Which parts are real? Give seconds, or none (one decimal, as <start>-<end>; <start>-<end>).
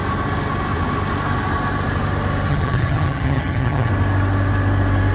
0.0-2.5; 3.9-5.1